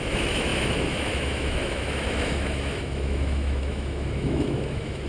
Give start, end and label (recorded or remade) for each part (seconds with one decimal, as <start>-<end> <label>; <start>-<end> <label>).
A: 0.0-5.1 remade